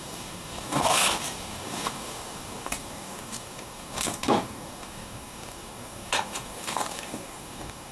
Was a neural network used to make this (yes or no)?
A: yes